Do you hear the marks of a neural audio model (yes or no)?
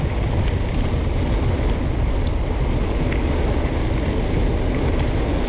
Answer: no